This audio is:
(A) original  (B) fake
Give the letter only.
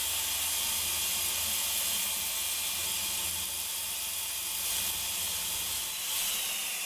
A